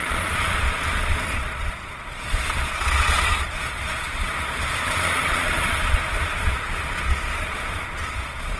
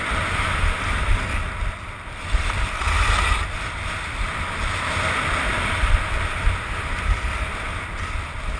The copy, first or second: first